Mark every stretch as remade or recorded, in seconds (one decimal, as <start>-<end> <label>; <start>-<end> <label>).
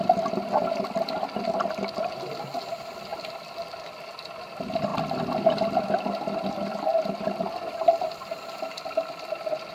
0.0-9.7 recorded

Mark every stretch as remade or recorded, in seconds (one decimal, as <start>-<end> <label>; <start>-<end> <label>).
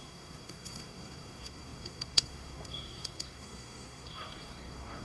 0.0-5.0 remade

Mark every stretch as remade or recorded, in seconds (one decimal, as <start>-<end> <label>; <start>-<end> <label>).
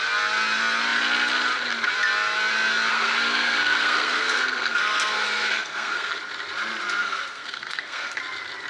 0.0-2.9 recorded; 2.9-6.2 remade; 6.2-7.0 recorded; 7.0-8.2 remade; 8.2-8.7 recorded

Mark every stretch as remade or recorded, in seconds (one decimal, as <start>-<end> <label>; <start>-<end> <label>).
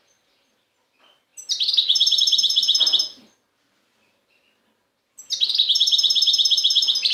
0.0-7.1 recorded